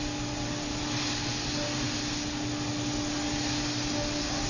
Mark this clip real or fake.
real